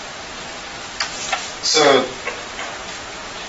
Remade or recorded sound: recorded